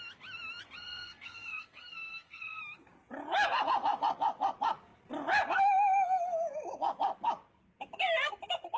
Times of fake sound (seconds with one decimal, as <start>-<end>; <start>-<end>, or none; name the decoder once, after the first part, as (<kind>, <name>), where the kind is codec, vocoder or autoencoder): 0.8-2.6 (codec, SNAC)